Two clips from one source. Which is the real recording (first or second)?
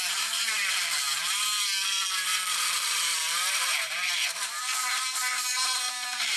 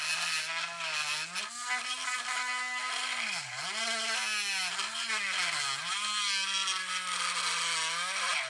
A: second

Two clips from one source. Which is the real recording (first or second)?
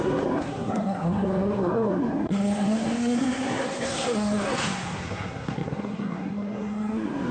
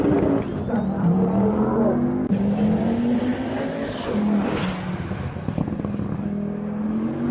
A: second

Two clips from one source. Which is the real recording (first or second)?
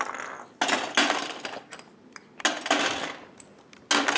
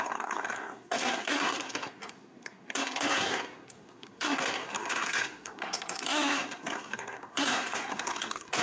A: first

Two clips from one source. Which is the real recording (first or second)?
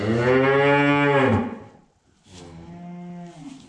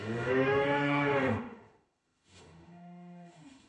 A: first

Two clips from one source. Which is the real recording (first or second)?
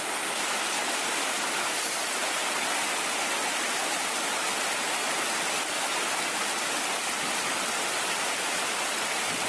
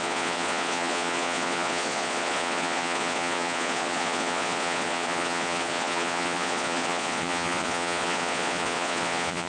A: first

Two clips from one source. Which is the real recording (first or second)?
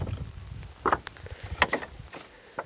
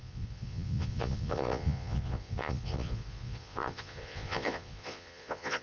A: first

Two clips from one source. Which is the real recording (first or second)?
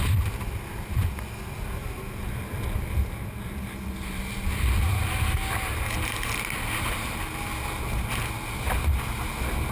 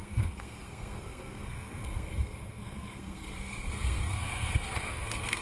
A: first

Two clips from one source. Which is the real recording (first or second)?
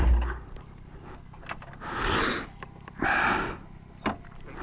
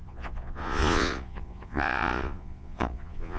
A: first